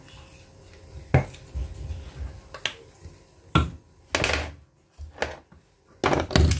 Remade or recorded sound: recorded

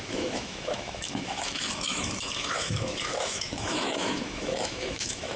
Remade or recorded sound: remade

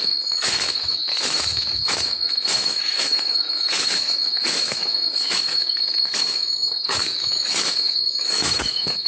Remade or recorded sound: remade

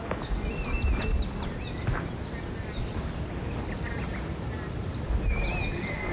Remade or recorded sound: recorded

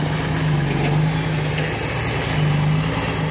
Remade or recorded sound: recorded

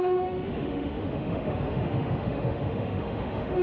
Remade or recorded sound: remade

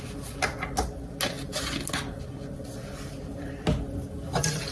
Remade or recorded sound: recorded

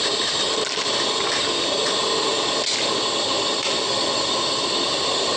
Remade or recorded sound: recorded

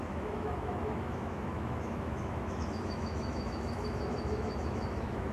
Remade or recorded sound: remade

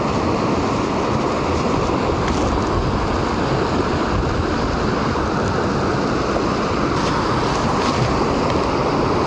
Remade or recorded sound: recorded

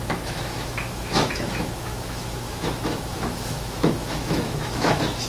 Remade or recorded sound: remade